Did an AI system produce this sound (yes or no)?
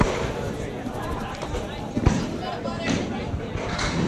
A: no